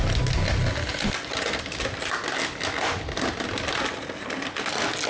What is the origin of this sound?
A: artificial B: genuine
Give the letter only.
B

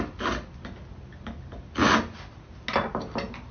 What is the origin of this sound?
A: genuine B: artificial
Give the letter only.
A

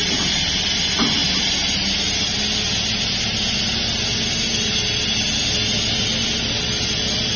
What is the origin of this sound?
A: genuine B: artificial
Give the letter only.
A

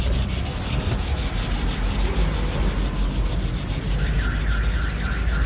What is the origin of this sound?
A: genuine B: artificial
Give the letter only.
A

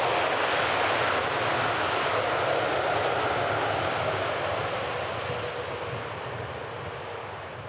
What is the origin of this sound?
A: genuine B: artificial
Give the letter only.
A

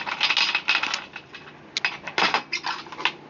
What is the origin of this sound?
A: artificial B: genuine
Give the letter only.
B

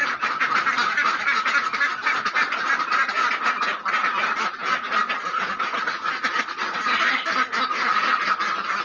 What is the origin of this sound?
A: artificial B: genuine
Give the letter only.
B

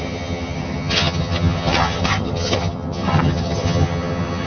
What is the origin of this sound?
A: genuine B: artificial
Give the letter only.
B